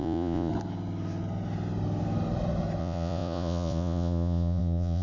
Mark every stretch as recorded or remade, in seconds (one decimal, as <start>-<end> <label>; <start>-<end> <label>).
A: 0.0-0.5 remade; 0.5-2.8 recorded; 2.8-5.0 remade

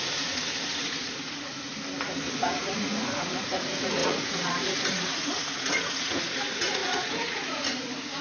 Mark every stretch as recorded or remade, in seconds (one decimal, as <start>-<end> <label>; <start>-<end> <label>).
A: 0.0-1.7 remade; 1.7-2.3 recorded; 2.3-8.2 remade

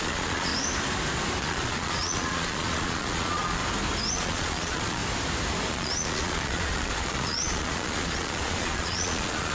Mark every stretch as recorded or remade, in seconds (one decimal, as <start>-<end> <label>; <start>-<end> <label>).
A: 0.0-0.5 remade; 0.5-1.4 recorded; 1.4-3.6 remade; 3.6-4.1 recorded; 4.1-5.0 remade; 5.0-5.7 recorded; 5.7-9.5 remade

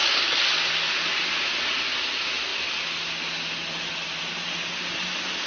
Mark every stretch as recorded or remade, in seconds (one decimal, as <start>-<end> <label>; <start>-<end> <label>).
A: 0.0-5.5 recorded

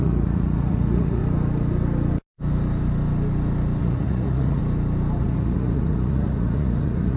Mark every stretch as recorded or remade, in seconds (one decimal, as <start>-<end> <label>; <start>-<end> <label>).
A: 0.0-1.2 remade; 1.2-3.8 recorded; 3.8-4.6 remade; 4.6-5.2 recorded; 5.2-7.2 remade

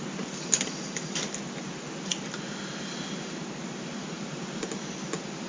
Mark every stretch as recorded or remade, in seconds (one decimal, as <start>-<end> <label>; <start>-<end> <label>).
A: 0.0-5.5 recorded